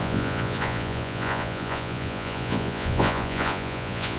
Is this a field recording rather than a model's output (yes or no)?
no